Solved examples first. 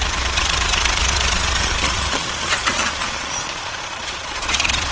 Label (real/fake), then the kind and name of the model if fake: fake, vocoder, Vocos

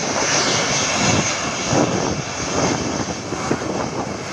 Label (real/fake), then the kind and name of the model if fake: real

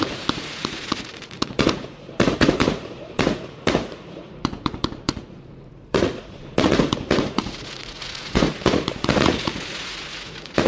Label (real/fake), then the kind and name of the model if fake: fake, vocoder, Vocos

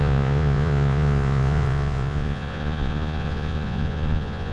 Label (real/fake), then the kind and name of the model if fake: fake, vocoder, Vocos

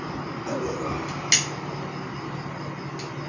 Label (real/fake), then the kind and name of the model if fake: real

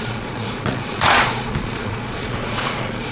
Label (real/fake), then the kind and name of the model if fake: fake, vocoder, Vocos